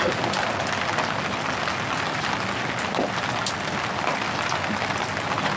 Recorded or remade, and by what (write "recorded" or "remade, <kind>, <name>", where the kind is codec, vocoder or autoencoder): recorded